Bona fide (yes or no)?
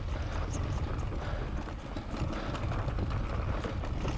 yes